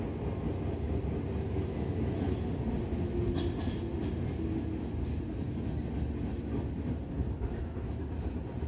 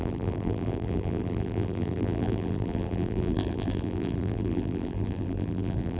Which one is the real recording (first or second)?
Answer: first